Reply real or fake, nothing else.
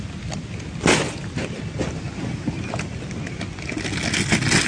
real